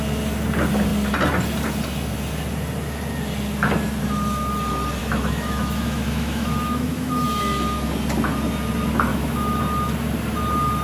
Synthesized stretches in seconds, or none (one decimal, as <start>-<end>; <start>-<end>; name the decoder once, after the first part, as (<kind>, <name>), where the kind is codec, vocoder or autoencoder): 5.0-7.4 (autoencoder, DAC-VAE); 9.1-9.6